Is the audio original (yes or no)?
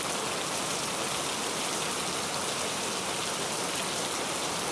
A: yes